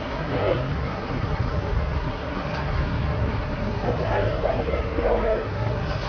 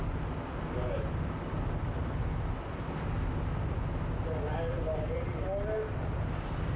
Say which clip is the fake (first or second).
first